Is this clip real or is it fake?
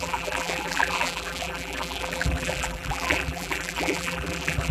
fake